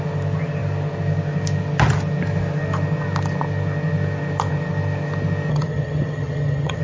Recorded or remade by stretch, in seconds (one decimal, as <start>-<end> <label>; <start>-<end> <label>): 0.0-5.5 recorded; 5.5-6.8 remade